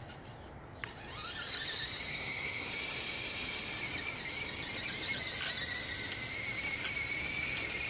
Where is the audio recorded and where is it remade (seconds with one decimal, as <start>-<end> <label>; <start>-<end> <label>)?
0.0-2.1 recorded; 2.1-2.7 remade; 2.7-7.9 recorded